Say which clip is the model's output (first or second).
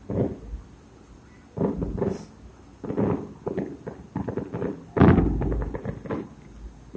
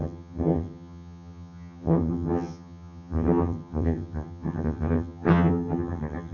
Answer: second